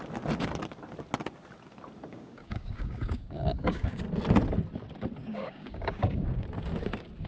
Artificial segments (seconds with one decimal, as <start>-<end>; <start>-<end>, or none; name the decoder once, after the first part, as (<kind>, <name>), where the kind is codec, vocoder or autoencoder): 2.1-4.0 (codec, DAC); 5.2-6.4